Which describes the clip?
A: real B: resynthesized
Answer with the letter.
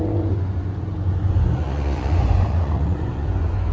B